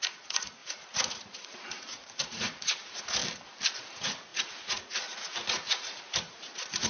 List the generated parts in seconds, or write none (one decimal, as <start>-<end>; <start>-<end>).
0.0-3.2; 3.7-6.9